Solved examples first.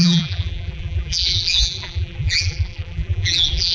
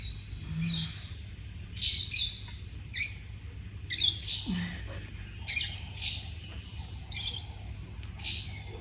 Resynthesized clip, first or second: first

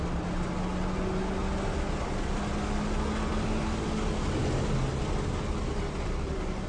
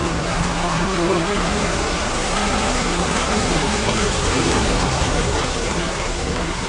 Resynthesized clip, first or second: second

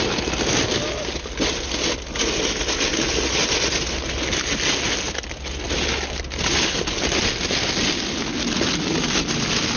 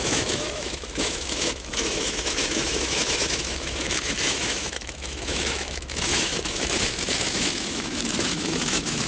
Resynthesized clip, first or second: second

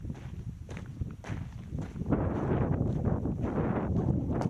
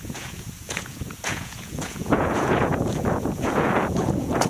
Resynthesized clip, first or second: second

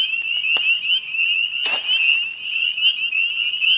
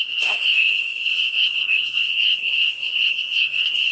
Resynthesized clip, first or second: second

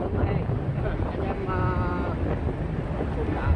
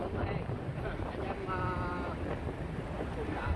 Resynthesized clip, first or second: second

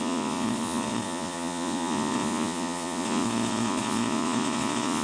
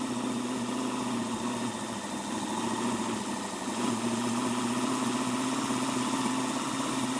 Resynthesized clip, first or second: first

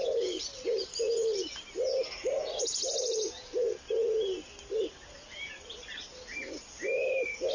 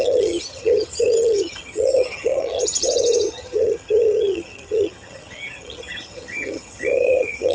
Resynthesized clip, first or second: second